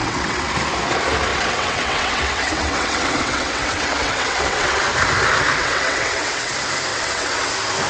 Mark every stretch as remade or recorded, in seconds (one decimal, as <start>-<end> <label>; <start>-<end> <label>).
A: 0.0-0.5 remade; 0.5-1.3 recorded; 1.3-4.8 remade; 4.8-5.6 recorded; 5.6-6.5 remade; 6.5-6.9 recorded; 6.9-7.5 remade; 7.5-7.9 recorded